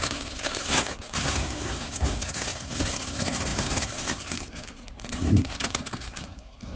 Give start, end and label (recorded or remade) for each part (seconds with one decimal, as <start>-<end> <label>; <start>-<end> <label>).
0.0-6.8 remade